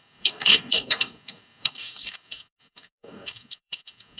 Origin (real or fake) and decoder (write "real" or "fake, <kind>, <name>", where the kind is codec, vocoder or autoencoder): fake, codec, DAC